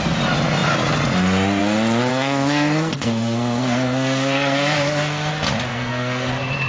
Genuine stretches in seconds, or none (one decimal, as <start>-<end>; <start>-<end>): 0.0-2.1; 5.3-5.7; 6.3-6.7